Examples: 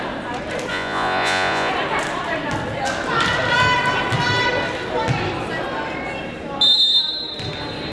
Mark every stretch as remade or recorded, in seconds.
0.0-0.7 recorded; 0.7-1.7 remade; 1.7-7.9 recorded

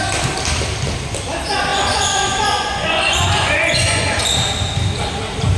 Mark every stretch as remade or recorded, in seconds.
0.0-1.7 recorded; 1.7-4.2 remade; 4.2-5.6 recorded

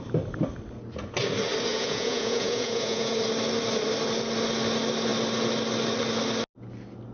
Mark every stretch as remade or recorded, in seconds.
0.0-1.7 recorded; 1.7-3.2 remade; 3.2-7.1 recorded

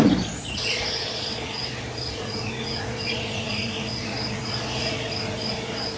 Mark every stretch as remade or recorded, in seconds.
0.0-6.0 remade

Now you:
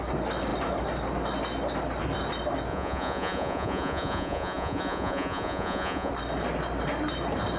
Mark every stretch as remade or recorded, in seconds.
0.0-2.7 recorded; 2.7-6.1 remade; 6.1-7.6 recorded